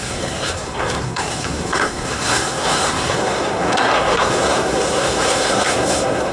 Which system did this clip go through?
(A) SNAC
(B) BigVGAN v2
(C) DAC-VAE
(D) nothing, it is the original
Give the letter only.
A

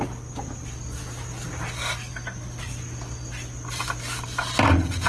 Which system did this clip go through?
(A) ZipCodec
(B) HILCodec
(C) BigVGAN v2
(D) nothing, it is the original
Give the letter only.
D